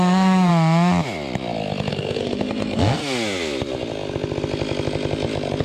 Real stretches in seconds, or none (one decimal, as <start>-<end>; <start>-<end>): 0.5-1.9; 3.0-5.6